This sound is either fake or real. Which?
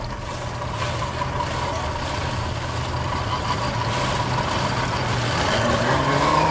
real